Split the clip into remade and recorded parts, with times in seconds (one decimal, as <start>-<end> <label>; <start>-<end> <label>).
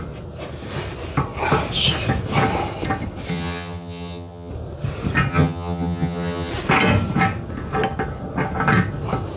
0.0-3.3 recorded; 3.3-4.5 remade; 4.5-5.3 recorded; 5.3-6.5 remade; 6.5-9.4 recorded